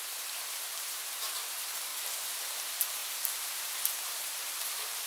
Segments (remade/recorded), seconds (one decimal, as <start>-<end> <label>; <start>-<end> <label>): 0.0-1.9 remade; 1.9-2.6 recorded; 2.6-5.1 remade